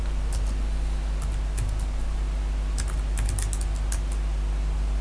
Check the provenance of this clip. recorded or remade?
recorded